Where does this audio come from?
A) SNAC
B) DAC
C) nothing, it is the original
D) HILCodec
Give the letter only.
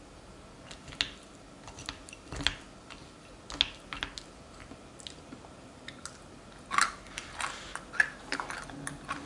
C